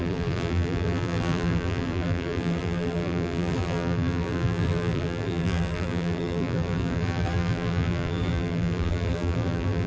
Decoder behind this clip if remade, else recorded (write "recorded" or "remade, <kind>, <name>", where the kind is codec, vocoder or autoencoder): remade, vocoder, BigVGAN v2